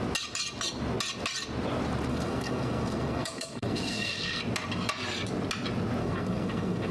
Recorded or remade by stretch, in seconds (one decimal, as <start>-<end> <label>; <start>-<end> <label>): 0.0-2.1 recorded; 2.1-4.4 remade; 4.4-6.0 recorded; 6.0-6.9 remade